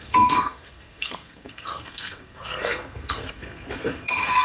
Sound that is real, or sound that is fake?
fake